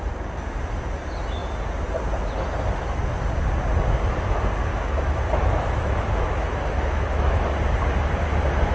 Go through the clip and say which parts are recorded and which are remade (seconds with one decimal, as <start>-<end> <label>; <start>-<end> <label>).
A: 0.0-4.7 recorded; 4.7-7.5 remade; 7.5-8.7 recorded